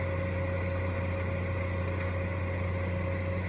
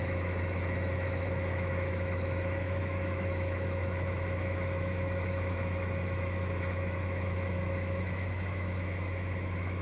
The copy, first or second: second